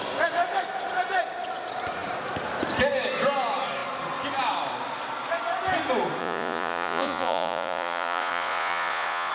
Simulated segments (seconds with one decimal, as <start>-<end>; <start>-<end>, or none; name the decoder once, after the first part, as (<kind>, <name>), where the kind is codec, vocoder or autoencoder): 6.2-9.3 (vocoder, Vocos)